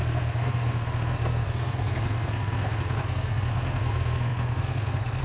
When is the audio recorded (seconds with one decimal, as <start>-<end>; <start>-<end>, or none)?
none

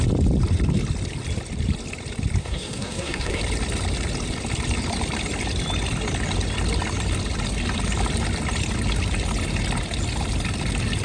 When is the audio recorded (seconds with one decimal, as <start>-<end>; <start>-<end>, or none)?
0.0-2.4; 3.4-11.0

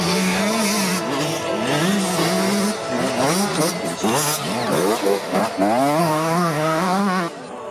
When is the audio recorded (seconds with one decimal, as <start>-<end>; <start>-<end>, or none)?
0.4-5.0; 5.4-6.0; 7.0-7.7

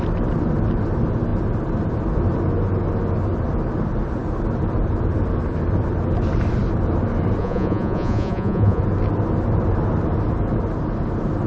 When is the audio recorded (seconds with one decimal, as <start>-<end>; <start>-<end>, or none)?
0.0-7.4; 8.8-11.5

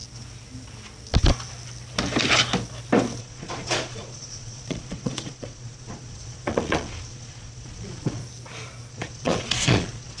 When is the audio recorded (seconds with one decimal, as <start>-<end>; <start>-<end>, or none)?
0.0-3.2; 8.2-8.9